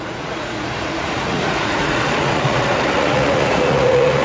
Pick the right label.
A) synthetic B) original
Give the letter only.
A